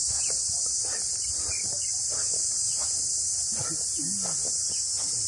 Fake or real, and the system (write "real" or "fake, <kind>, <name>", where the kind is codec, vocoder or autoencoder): real